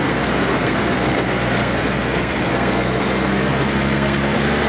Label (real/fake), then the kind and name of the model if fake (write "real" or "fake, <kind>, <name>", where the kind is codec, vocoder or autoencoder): fake, codec, SNAC